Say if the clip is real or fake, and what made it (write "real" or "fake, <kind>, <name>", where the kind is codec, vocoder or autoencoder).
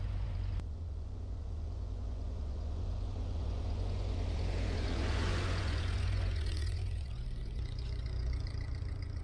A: fake, vocoder, Vocos